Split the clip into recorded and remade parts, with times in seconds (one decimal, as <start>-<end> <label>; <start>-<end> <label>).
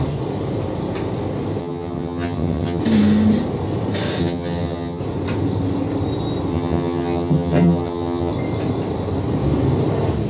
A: 0.0-1.6 recorded; 1.6-2.8 remade; 2.8-4.2 recorded; 4.2-5.0 remade; 5.0-6.5 recorded; 6.5-8.3 remade; 8.3-10.3 recorded